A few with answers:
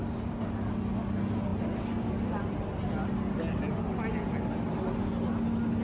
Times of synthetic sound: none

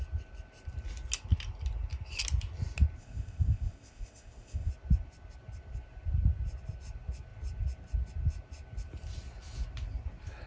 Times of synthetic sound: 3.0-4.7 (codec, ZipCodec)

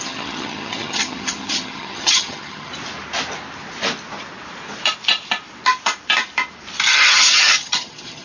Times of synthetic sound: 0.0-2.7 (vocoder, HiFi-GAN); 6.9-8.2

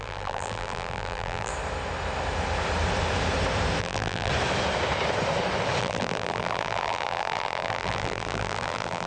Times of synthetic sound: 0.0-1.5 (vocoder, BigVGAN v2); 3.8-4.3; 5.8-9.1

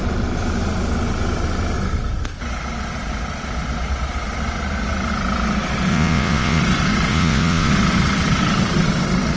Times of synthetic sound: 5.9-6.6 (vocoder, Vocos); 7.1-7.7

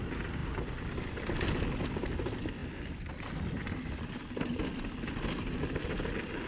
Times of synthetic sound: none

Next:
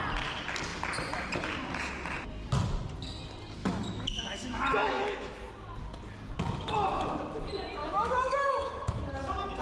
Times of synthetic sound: 3.6-5.5 (autoencoder, DAC-VAE); 7.8-9.0